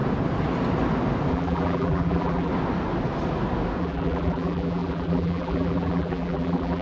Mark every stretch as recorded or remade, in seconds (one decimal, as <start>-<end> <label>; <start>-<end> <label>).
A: 0.0-1.3 recorded; 1.3-2.5 remade; 2.5-3.8 recorded; 3.8-6.8 remade